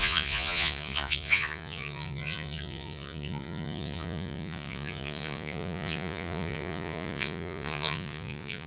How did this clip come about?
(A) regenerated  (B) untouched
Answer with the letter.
A